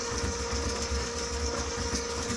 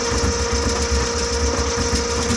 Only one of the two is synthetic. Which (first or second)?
first